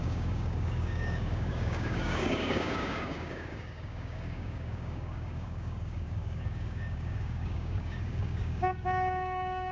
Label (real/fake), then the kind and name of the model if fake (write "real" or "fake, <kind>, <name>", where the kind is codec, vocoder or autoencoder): fake, codec, DAC